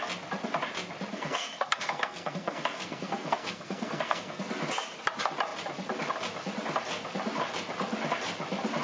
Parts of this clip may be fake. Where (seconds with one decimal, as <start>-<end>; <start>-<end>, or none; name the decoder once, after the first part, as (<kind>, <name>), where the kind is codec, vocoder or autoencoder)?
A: 1.1-4.4 (codec, SNAC)